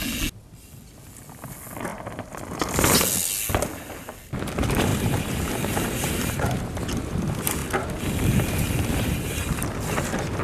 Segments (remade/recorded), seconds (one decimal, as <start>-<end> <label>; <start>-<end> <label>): 0.0-4.9 recorded; 4.9-6.8 remade; 6.8-10.4 recorded